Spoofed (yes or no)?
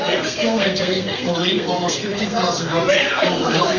yes